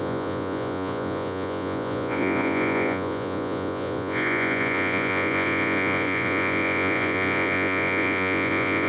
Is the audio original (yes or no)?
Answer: no